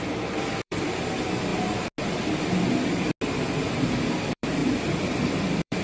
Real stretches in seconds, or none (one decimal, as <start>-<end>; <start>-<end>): 1.5-3.7